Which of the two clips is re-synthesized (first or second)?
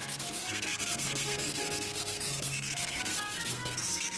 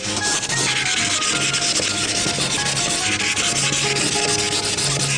first